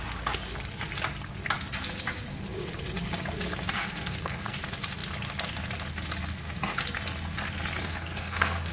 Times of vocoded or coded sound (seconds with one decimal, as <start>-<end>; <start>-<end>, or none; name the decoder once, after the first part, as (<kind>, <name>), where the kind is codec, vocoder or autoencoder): 3.8-4.6 (codec, SNAC); 7.8-8.7